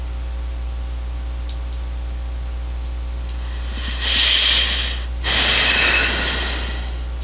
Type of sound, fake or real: real